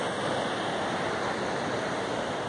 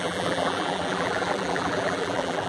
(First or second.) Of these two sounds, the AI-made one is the second